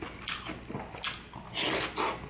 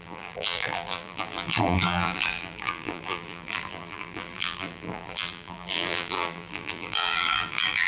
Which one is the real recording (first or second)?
first